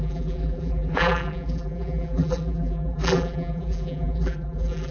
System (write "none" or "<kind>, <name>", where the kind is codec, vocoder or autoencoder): vocoder, BigVGAN v2